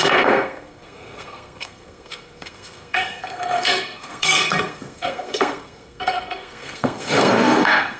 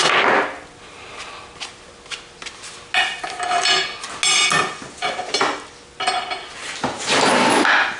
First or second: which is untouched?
second